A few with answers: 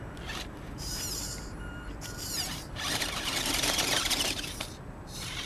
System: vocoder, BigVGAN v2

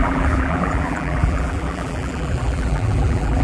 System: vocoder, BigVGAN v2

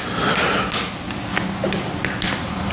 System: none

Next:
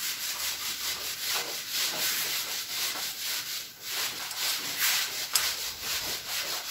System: vocoder, BigVGAN v2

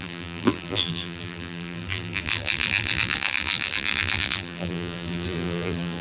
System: vocoder, BigVGAN v2